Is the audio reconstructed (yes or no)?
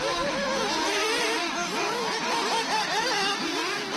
no